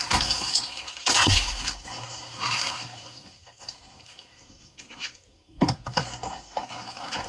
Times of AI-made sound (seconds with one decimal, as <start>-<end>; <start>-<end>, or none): 0.0-7.3